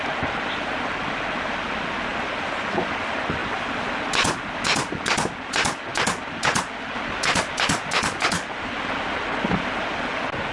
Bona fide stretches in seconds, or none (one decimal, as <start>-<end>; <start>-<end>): 0.0-10.5

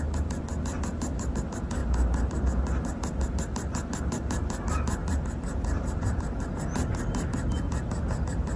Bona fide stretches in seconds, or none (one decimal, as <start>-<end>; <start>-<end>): 0.0-5.0; 6.5-8.6

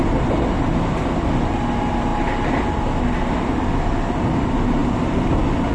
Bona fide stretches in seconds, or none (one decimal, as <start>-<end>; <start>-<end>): 0.0-5.7

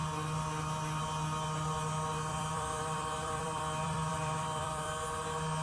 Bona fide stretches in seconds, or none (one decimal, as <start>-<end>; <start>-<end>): 0.0-2.3; 4.9-5.6

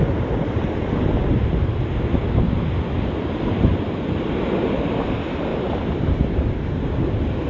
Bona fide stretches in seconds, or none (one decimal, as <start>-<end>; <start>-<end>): 0.0-5.5; 6.8-7.5